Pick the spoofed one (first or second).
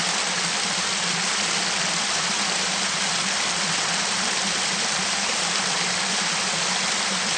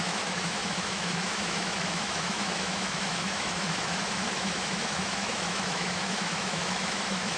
second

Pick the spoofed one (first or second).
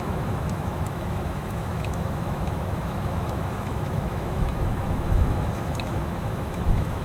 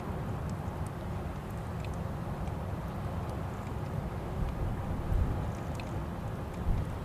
first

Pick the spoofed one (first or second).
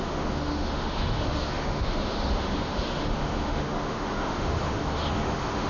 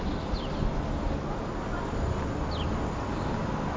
first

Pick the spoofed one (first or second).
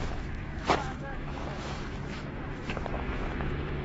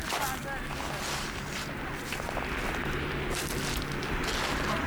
first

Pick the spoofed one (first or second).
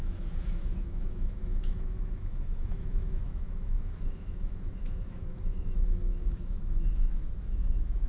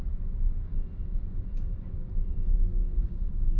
first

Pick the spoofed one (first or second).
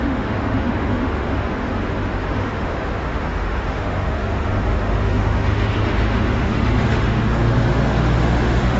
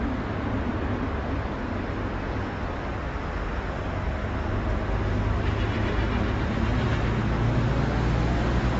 first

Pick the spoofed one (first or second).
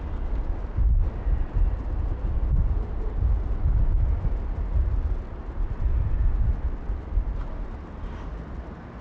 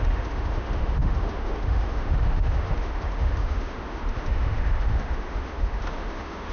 second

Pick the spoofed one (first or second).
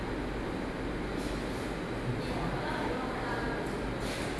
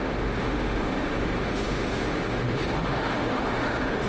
second